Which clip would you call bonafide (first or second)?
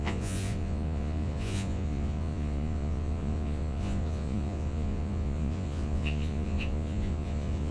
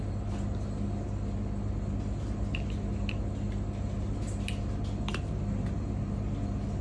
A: second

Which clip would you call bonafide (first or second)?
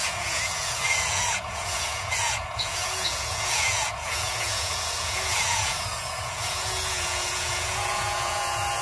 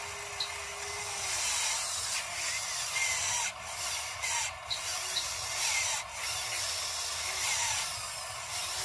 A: second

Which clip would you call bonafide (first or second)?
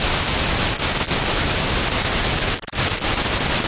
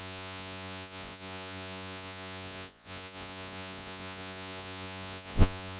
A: first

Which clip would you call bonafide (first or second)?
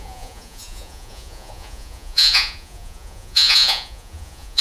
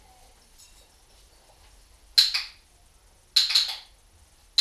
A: second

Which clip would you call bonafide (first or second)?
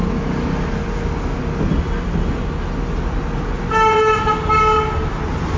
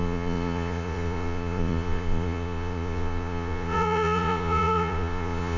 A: first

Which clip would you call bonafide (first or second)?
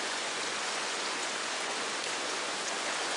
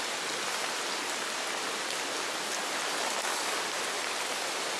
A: second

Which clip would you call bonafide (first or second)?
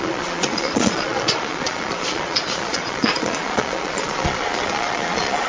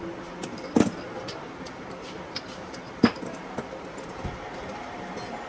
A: second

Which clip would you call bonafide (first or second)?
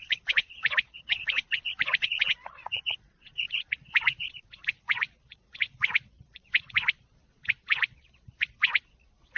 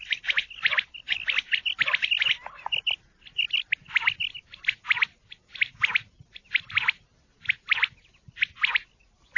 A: second